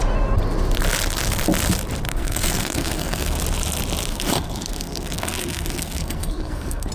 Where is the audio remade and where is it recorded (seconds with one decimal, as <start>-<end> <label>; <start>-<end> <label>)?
0.0-2.1 recorded; 2.1-3.4 remade; 3.4-4.1 recorded; 4.1-6.9 remade